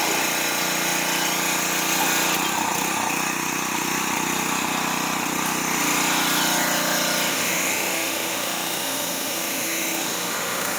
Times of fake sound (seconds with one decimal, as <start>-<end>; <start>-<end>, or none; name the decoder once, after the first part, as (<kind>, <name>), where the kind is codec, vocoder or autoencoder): 7.3-10.8 (autoencoder, DAC-VAE)